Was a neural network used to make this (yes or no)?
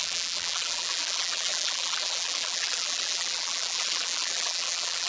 yes